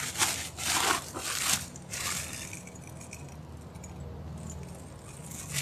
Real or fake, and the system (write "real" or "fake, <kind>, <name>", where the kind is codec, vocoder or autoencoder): real